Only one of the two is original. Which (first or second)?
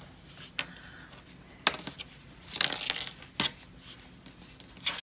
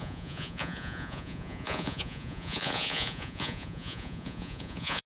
first